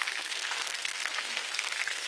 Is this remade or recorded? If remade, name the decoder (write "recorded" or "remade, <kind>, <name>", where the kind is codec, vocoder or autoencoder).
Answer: remade, codec, SNAC